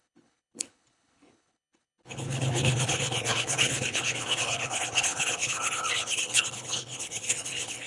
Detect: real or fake fake